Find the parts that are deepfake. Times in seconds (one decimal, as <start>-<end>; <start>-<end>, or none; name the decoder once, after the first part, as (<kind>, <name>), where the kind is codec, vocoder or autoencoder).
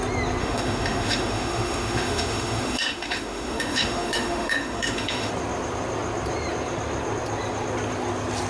0.4-5.3 (autoencoder, DAC-VAE)